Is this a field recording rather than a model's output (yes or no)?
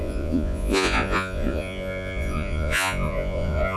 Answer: no